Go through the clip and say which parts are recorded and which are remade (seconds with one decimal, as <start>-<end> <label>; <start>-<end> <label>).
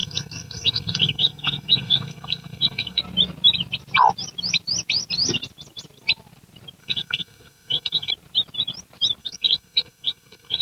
0.0-3.0 remade; 3.0-6.8 recorded; 6.8-8.1 remade; 8.1-9.2 recorded; 9.2-10.6 remade